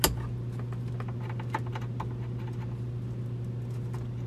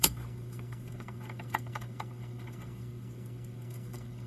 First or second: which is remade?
second